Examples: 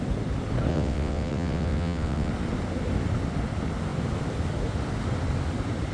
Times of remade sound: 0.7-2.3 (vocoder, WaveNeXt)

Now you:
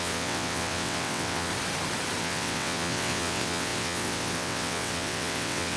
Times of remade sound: 0.0-1.5 (vocoder, WaveNeXt); 2.2-5.8

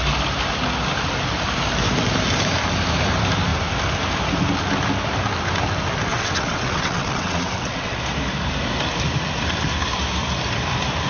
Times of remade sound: 6.1-8.0 (vocoder, WaveNeXt)

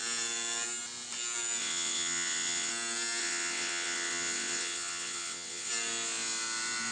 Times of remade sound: 1.6-2.7 (vocoder, WaveNeXt); 3.2-5.7